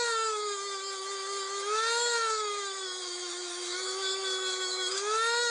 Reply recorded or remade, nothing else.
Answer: remade